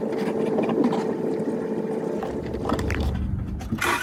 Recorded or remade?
recorded